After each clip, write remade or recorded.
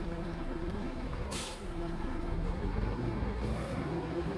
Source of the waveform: remade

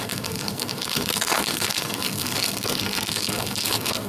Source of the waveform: remade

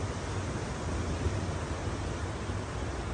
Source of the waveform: recorded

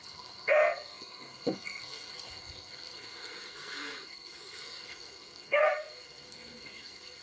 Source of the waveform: remade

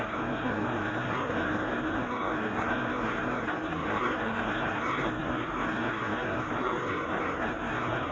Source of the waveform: remade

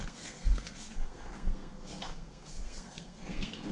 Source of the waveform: remade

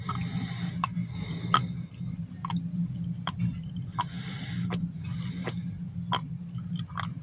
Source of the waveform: recorded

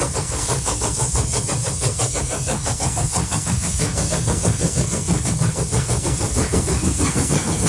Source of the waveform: remade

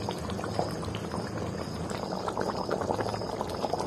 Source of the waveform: recorded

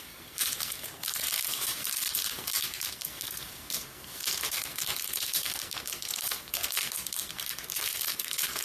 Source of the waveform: remade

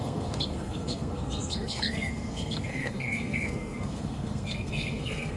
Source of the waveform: remade